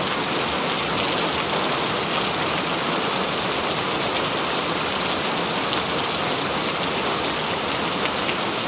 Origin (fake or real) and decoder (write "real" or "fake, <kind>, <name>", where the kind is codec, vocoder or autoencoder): real